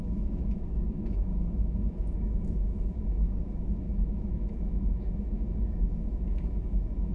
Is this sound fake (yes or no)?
yes